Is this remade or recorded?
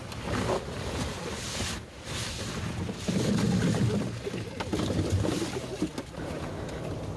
recorded